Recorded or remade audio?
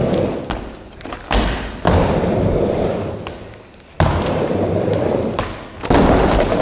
recorded